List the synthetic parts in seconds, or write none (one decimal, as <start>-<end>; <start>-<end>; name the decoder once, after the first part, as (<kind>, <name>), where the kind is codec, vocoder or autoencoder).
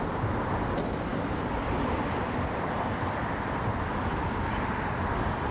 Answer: 0.0-5.5 (vocoder, BigVGAN v2)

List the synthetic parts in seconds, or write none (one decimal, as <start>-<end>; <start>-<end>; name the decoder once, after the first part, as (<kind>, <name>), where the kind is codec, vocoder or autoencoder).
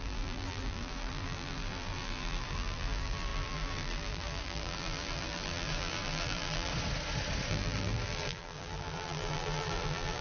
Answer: 0.0-6.7 (vocoder, BigVGAN v2); 7.5-10.2